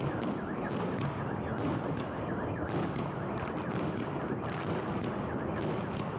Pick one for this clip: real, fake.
real